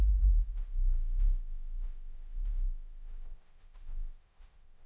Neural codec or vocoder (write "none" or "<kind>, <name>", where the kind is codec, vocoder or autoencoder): autoencoder, DAC-VAE